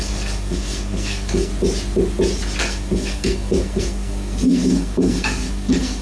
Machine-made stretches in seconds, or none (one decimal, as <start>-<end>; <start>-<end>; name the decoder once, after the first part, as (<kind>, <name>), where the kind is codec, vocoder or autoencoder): 0.0-1.5 (codec, SNAC); 2.6-6.0